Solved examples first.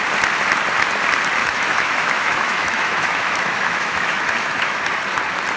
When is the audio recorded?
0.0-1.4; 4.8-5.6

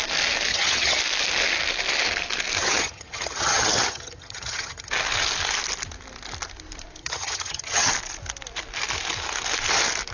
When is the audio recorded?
0.0-0.5; 1.0-2.6; 4.9-7.0; 7.9-10.1